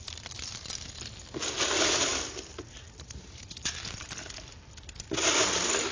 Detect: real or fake real